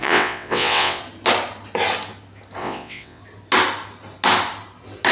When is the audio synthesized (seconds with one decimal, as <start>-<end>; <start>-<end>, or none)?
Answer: 0.0-1.0; 2.6-3.2